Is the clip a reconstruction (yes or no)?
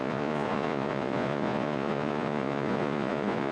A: yes